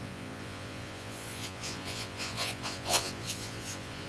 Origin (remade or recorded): remade